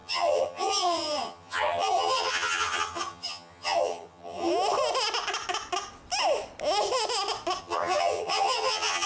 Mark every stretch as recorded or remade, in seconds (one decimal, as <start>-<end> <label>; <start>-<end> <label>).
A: 0.0-4.5 remade; 4.5-7.6 recorded; 7.6-9.1 remade